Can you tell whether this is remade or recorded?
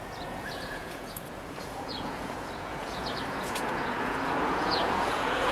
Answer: remade